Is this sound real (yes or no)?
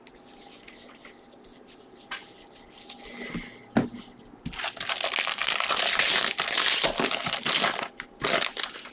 yes